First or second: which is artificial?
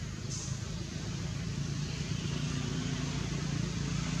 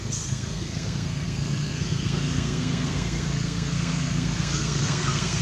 second